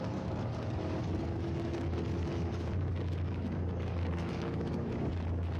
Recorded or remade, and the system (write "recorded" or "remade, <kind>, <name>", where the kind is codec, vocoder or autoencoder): remade, codec, DAC